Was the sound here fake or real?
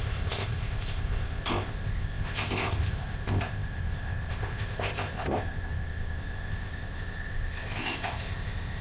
fake